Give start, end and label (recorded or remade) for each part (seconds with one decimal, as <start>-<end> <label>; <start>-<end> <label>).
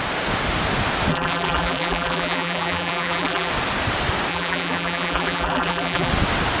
0.0-1.1 recorded; 1.1-3.5 remade; 3.5-4.3 recorded; 4.3-6.1 remade; 6.1-6.6 recorded